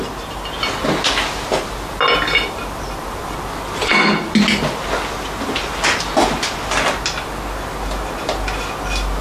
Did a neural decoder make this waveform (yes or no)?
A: no